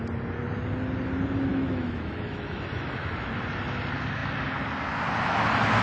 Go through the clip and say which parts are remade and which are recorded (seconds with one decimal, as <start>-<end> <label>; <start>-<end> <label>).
0.0-1.5 recorded; 1.5-3.1 remade; 3.1-5.8 recorded